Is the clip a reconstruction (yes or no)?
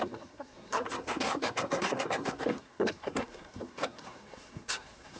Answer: yes